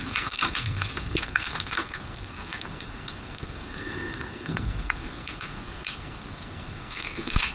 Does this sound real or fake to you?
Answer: fake